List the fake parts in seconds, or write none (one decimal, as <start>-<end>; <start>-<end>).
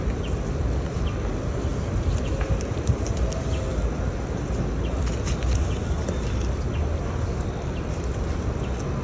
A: none